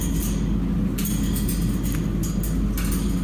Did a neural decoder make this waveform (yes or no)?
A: no